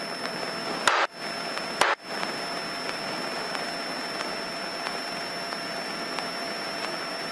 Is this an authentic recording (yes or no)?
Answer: yes